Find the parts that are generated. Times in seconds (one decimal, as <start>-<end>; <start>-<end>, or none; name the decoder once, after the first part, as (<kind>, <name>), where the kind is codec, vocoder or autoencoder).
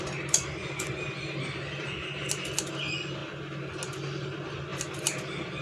none